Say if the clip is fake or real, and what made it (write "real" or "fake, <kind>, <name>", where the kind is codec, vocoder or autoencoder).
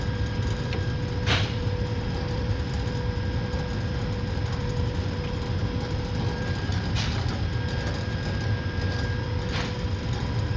real